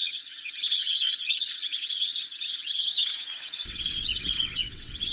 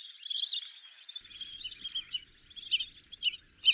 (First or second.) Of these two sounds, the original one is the second